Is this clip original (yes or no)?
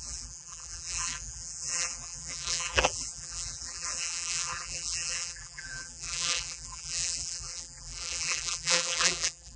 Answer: no